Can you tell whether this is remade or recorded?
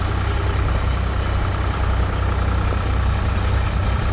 recorded